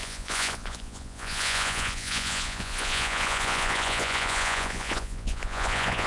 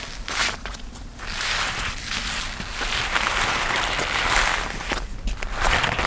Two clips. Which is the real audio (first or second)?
second